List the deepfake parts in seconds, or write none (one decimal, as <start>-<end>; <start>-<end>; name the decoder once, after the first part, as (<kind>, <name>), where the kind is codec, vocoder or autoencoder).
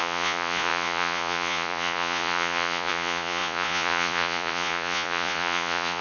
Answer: 0.0-6.0 (vocoder, Vocos)